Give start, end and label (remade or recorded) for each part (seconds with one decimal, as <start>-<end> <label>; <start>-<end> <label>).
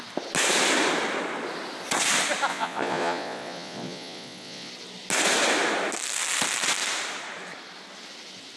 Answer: 0.0-2.5 recorded; 2.5-4.7 remade; 4.7-8.6 recorded